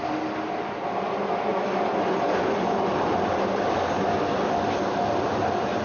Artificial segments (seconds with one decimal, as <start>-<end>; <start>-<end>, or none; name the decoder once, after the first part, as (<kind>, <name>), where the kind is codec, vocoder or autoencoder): none